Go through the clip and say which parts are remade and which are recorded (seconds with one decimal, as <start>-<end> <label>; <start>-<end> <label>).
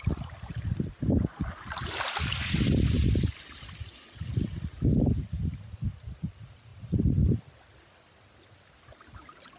0.0-9.6 recorded